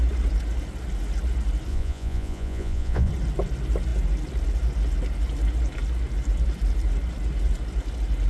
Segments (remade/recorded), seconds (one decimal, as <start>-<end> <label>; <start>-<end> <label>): 0.0-1.7 recorded; 1.7-3.1 remade; 3.1-8.3 recorded